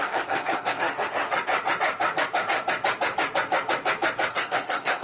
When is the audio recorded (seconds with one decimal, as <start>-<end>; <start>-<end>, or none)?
1.3-4.3